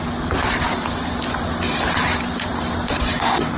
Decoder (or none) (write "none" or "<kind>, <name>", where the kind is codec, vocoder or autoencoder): none